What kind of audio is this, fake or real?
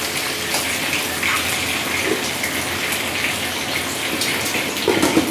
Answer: real